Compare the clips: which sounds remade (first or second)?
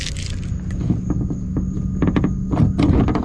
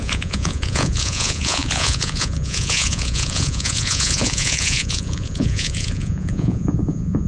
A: second